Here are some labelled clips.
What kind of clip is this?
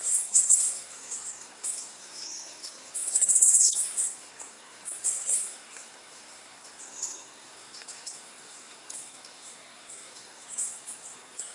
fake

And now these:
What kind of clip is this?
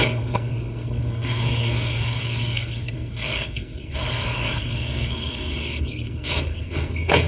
fake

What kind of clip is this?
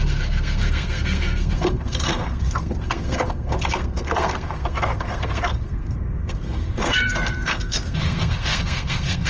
fake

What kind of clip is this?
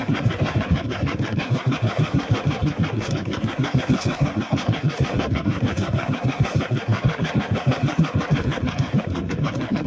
fake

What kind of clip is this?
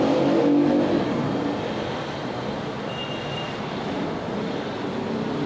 real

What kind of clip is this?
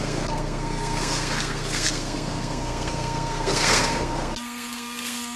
fake